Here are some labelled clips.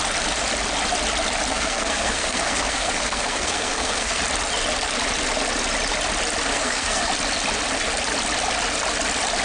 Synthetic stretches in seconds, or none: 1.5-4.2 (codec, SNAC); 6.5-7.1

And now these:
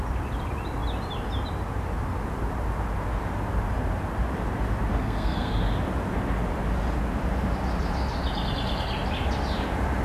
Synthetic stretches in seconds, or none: 4.9-5.5 (codec, SNAC)

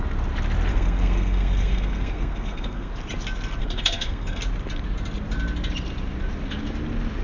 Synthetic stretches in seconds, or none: 0.7-2.9 (codec, SNAC); 3.6-4.4

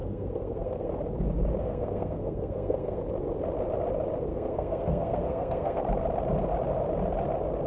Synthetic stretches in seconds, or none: 0.0-0.9 (codec, SNAC); 1.6-3.0; 4.3-5.8